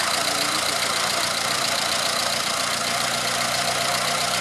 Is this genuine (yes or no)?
yes